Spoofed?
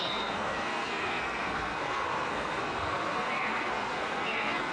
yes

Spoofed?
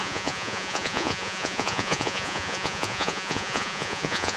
yes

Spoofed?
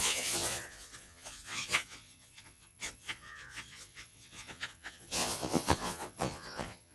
yes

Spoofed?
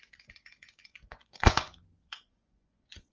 yes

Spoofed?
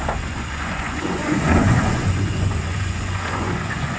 yes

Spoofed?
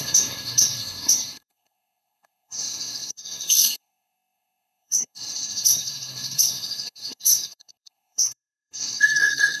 yes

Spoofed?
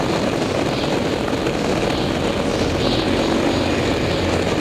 no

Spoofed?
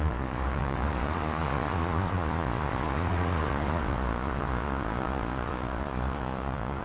yes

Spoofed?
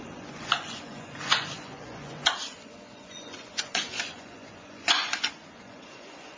yes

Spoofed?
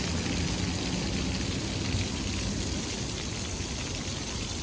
no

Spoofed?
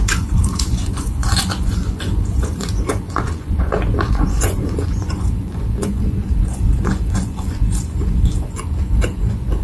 yes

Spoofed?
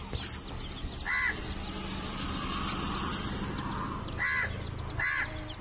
no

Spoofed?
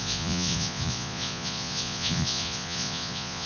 yes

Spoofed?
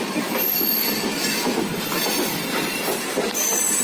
yes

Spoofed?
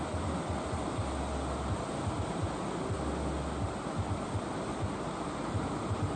no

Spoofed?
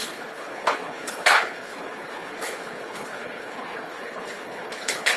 yes